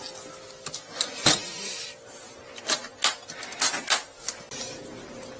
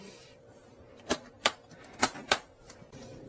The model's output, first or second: second